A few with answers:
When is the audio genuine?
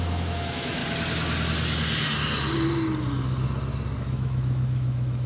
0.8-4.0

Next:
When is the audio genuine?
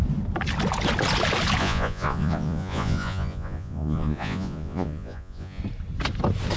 0.0-1.6; 5.6-6.6